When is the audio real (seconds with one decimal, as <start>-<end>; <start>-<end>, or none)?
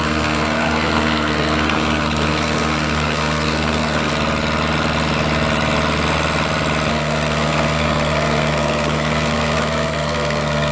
4.1-6.9